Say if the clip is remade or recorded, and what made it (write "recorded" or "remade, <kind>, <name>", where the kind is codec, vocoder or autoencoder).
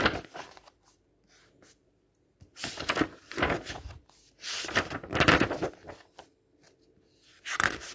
recorded